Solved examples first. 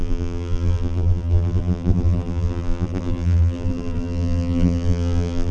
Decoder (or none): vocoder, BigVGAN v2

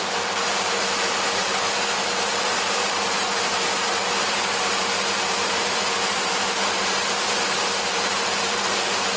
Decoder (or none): vocoder, BigVGAN v2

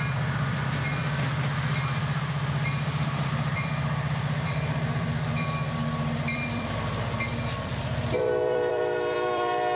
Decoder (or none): vocoder, BigVGAN v2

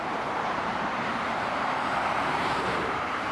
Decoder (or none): vocoder, BigVGAN v2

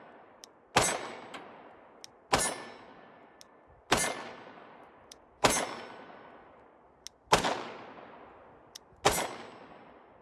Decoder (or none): none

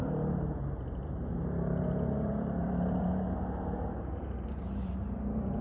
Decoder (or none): vocoder, BigVGAN v2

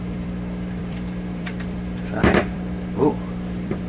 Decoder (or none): vocoder, BigVGAN v2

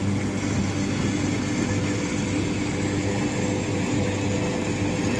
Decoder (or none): none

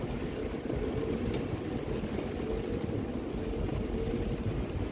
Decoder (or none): none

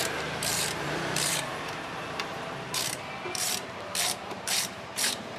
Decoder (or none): vocoder, BigVGAN v2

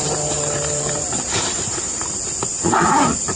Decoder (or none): vocoder, BigVGAN v2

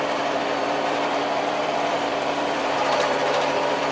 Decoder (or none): vocoder, BigVGAN v2